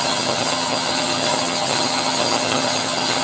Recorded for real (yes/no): no